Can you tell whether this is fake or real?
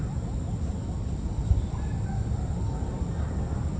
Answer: real